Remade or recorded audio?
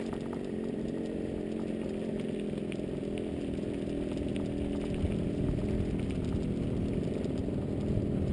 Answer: recorded